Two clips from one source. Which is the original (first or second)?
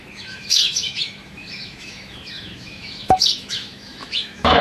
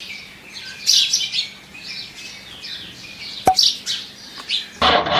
second